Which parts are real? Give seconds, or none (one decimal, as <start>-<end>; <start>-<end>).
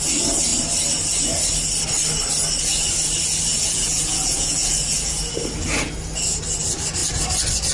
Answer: 0.0-3.5; 5.2-7.7